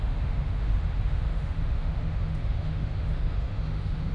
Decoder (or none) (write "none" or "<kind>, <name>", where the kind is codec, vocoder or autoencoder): autoencoder, DAC-VAE